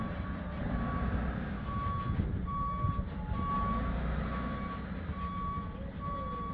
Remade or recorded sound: recorded